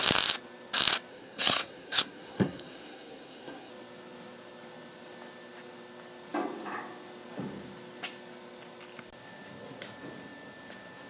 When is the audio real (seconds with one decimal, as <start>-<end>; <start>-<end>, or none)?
0.0-1.1; 3.7-11.1